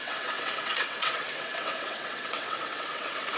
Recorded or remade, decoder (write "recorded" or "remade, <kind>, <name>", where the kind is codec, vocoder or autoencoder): remade, vocoder, WaveNeXt